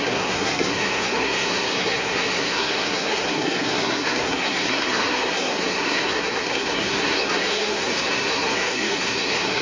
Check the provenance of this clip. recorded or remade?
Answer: remade